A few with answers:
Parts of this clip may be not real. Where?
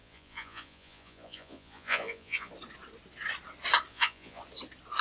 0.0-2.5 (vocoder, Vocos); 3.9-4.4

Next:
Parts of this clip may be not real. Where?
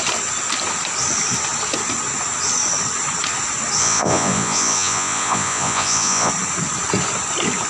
3.8-6.3 (vocoder, Vocos)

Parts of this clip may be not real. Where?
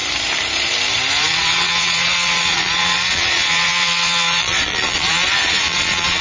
1.1-6.2 (vocoder, Vocos)